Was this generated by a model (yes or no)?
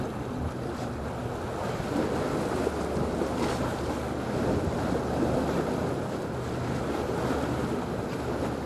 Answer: no